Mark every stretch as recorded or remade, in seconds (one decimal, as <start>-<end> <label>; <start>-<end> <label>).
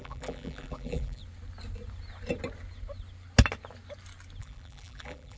0.0-1.2 remade; 1.2-4.4 recorded; 4.4-5.4 remade